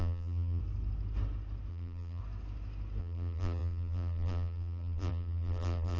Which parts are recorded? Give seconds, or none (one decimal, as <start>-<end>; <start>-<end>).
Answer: 0.6-1.7; 2.2-3.0